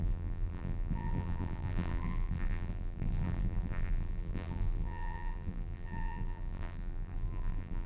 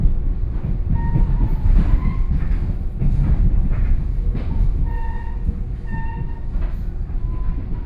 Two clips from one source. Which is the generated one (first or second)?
first